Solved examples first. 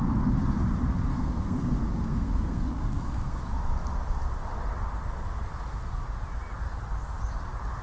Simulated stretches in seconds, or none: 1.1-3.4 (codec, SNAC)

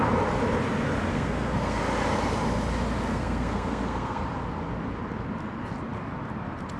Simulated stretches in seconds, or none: 1.1-1.8 (codec, SNAC); 3.1-4.2

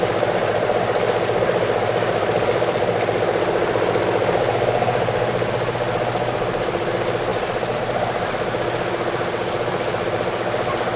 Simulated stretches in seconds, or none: none

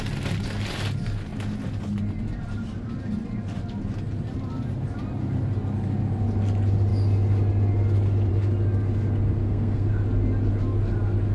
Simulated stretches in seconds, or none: 9.4-9.9 (codec, SNAC)

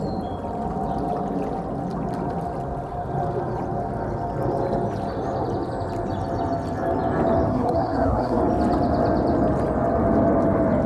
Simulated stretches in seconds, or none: 7.5-8.4 (codec, SNAC)

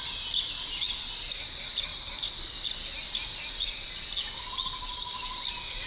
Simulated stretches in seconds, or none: none

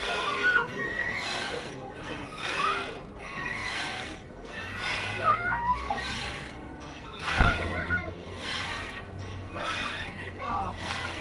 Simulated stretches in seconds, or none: 0.0-2.6 (codec, SNAC); 3.2-11.2

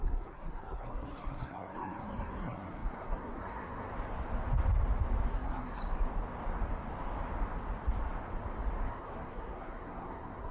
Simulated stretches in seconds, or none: 0.0-3.9 (codec, SNAC); 5.3-5.8; 8.9-10.5